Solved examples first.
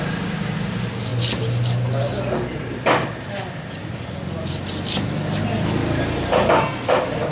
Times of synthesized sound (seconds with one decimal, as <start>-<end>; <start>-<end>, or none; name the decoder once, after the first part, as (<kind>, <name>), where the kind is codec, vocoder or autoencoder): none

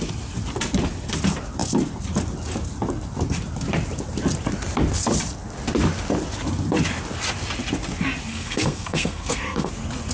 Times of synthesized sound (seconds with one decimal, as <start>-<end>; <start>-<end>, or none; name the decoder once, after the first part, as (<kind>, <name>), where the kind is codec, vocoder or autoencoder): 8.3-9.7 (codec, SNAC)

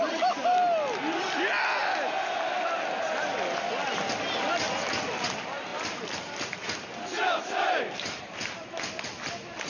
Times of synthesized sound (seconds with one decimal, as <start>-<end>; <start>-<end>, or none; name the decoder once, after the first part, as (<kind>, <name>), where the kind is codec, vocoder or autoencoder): 1.8-2.8 (vocoder, BigVGAN v2); 5.7-8.2

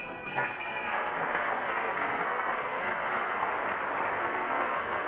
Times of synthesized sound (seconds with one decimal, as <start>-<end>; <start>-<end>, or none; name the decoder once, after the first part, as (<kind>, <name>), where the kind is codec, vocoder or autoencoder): 0.0-3.5 (codec, SNAC); 4.1-5.1

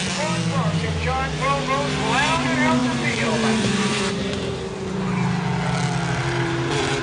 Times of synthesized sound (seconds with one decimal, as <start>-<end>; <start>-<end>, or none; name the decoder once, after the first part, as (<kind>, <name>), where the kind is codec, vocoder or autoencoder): 2.8-4.5 (vocoder, BigVGAN v2)